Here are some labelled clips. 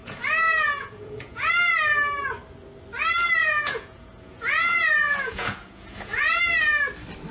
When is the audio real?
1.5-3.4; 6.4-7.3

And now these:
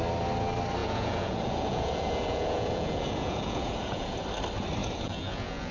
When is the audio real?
0.0-0.8; 4.2-4.8

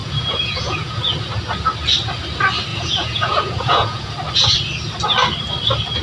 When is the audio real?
1.0-2.7; 4.1-6.0

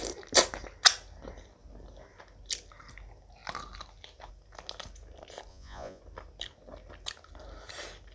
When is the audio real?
0.0-5.5; 6.0-8.1

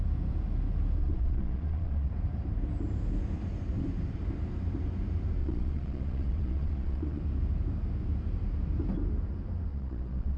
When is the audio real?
0.0-1.0; 2.1-5.4; 7.2-9.7